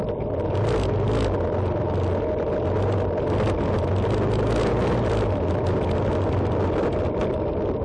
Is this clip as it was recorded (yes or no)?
yes